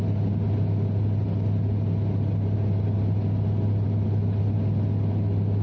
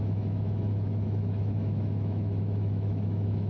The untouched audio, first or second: first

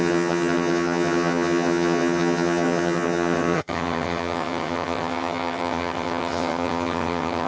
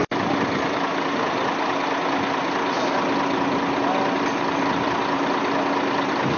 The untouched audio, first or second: second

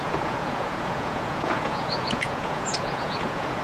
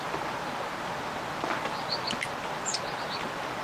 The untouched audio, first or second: second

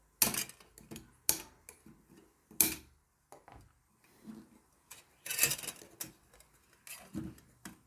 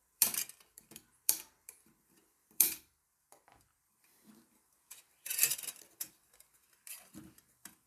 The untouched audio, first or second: first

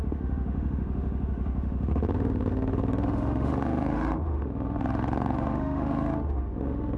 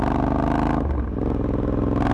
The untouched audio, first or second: second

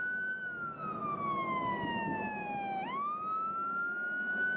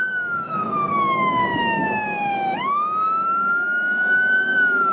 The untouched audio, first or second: first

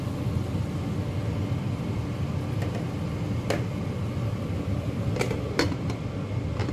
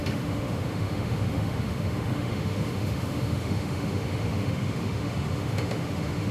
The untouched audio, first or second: first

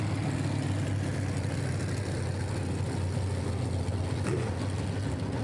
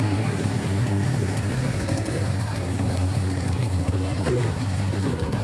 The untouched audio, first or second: first